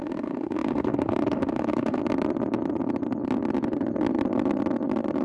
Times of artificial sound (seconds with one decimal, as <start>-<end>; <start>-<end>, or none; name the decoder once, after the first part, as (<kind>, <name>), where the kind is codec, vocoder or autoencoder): 0.0-2.0 (autoencoder, DAC-VAE)

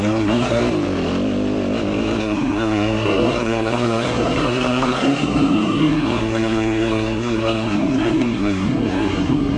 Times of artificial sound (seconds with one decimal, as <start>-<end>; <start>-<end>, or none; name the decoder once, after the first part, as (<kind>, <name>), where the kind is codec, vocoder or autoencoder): 0.0-0.6 (codec, SNAC); 2.2-9.6

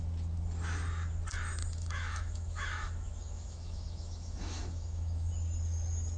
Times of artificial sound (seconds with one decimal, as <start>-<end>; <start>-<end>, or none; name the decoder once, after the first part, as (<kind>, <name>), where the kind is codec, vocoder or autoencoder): 1.6-5.3 (autoencoder, DAC-VAE)

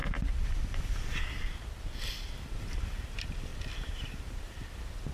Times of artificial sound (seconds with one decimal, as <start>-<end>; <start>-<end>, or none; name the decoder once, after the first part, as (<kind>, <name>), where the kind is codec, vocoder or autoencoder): 3.1-3.5 (vocoder, BigVGAN v2); 4.3-5.1

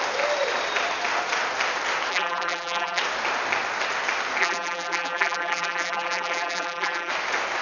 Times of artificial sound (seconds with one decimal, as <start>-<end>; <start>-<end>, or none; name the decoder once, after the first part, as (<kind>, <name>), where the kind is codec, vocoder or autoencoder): 2.1-3.0 (vocoder, BigVGAN v2); 4.4-7.1